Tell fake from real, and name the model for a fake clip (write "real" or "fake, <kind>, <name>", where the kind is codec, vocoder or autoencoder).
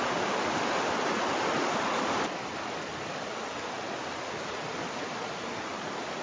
real